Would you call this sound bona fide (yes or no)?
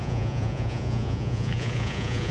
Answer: no